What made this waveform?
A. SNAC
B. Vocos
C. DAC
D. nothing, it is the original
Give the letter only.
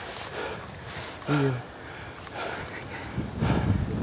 D